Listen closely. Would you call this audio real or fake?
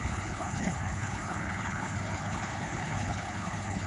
fake